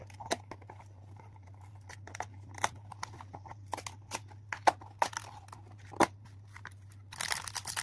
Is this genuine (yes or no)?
yes